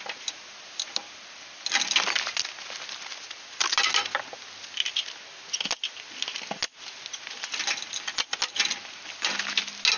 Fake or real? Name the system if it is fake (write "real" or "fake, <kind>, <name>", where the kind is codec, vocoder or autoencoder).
real